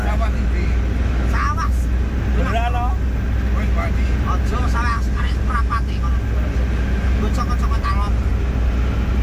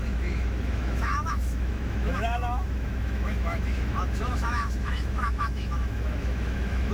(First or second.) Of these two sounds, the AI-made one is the second